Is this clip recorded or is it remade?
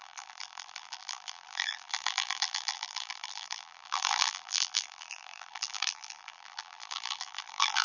remade